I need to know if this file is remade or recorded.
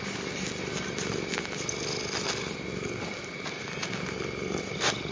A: recorded